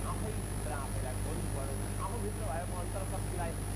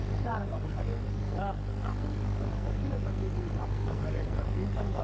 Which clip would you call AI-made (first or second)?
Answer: second